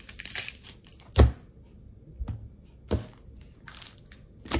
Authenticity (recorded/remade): recorded